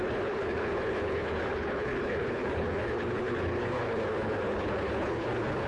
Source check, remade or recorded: remade